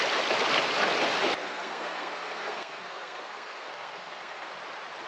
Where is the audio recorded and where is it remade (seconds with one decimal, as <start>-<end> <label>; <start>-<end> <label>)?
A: 0.0-1.4 recorded; 1.4-4.5 remade; 4.5-5.1 recorded